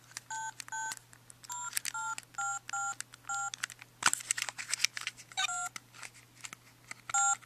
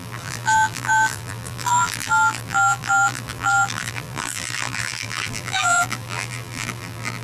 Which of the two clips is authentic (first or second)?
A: first